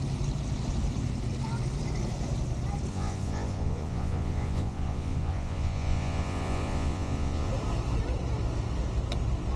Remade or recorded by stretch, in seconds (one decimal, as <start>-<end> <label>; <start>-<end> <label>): 0.0-2.9 recorded; 2.9-7.5 remade; 7.5-9.6 recorded